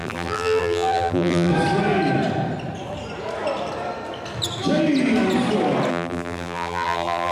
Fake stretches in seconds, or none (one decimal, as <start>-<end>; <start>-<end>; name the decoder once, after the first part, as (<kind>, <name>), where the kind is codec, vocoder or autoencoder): 0.0-1.5 (vocoder, BigVGAN v2); 5.9-7.3